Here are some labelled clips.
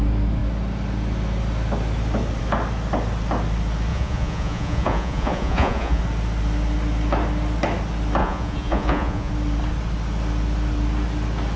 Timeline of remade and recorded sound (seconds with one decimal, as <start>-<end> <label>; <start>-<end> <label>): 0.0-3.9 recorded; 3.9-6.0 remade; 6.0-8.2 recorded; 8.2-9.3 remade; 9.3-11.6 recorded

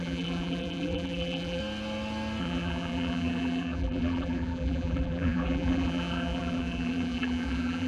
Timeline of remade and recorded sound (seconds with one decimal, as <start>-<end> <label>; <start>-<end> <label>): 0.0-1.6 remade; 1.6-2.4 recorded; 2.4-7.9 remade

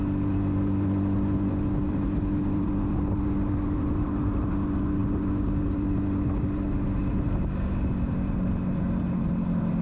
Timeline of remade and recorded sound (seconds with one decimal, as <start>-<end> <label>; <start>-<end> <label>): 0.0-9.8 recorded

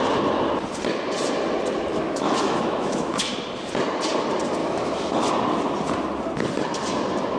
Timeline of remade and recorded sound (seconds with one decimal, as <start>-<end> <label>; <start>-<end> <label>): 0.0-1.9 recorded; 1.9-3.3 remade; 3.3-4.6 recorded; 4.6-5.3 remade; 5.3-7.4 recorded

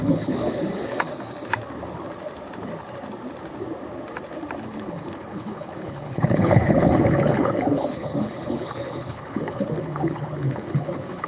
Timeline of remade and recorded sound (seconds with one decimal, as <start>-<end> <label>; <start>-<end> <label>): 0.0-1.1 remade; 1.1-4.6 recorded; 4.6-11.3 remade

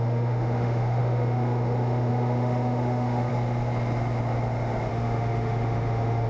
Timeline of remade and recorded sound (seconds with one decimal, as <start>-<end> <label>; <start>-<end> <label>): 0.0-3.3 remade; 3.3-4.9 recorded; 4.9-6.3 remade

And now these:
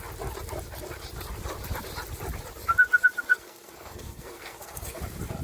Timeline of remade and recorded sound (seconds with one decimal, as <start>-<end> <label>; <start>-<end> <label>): 0.0-3.3 recorded; 3.3-5.0 remade; 5.0-5.4 recorded